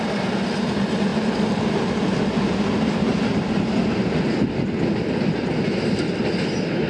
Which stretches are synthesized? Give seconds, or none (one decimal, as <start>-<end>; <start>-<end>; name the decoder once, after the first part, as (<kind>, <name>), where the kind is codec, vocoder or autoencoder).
none